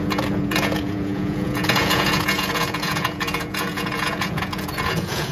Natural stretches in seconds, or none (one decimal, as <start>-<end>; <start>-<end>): none